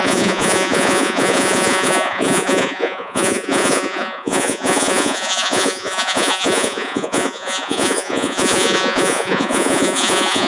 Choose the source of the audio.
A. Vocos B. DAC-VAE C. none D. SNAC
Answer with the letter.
A